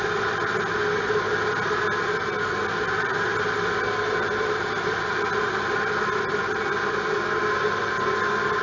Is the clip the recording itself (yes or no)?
yes